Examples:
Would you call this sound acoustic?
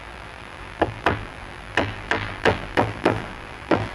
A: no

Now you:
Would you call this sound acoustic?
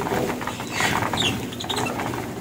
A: yes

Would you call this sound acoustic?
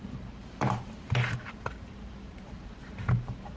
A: no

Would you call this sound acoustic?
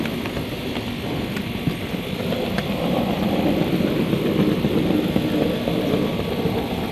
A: yes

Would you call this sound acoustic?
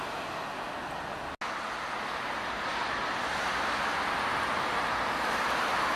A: yes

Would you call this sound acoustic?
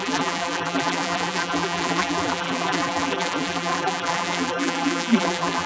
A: no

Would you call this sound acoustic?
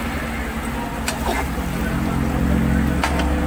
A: yes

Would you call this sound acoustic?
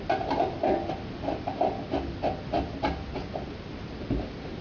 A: yes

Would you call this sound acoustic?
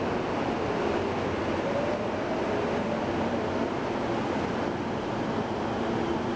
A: yes